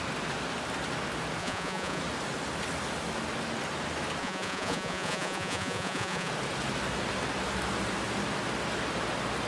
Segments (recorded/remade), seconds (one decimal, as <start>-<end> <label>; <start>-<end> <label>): 0.0-1.4 recorded; 1.4-2.0 remade; 2.0-4.2 recorded; 4.2-6.3 remade; 6.3-9.5 recorded